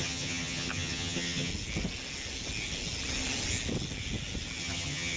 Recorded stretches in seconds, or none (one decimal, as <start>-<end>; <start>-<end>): 1.5-4.6